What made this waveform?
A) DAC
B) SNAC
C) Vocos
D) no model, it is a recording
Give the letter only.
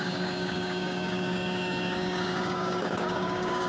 A